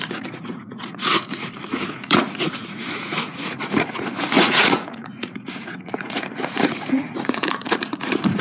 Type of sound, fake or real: fake